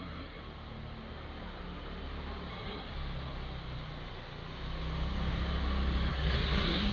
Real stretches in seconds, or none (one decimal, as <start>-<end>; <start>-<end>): 0.4-2.5; 2.9-6.1